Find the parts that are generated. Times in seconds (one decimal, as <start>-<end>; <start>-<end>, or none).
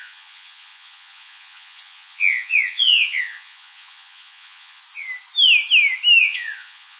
0.0-4.8; 6.2-7.0